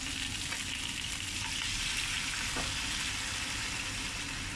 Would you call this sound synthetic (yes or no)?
no